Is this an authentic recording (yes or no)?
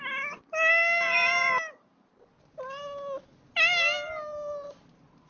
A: yes